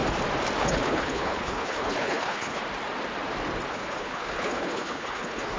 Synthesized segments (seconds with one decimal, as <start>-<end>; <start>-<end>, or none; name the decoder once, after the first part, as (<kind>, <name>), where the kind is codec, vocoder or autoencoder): 0.6-2.6 (codec, HILCodec); 3.7-5.6